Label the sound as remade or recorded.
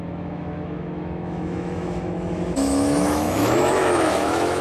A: remade